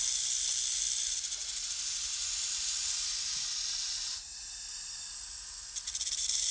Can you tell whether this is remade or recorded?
recorded